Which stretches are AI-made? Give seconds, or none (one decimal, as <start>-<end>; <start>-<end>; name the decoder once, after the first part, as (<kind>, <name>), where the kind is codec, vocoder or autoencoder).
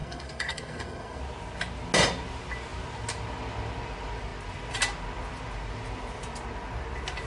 0.0-1.2 (codec, SNAC)